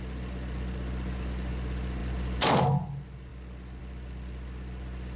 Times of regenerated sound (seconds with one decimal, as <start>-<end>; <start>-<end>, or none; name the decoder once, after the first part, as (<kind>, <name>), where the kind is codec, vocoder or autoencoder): none